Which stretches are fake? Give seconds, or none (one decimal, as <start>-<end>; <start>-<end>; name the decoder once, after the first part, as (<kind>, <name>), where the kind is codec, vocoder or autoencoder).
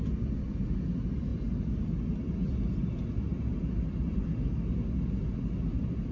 none